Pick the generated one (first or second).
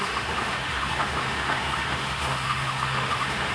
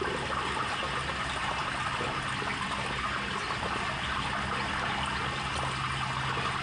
first